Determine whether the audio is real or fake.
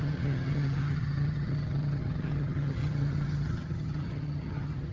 fake